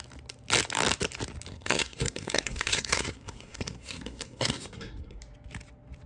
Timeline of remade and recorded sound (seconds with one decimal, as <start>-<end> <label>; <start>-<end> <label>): 0.0-1.5 recorded; 1.5-5.2 remade; 5.2-6.1 recorded